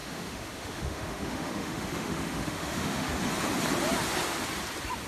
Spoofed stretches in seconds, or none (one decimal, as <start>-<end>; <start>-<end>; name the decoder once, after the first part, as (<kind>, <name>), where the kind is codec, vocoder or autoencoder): 0.0-3.1 (autoencoder, DAC-VAE)